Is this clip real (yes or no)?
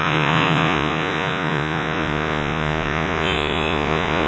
no